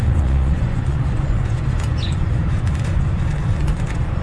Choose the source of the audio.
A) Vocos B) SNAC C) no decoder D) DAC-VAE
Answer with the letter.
A